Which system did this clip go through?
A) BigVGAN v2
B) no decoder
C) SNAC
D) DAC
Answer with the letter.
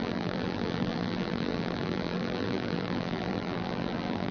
A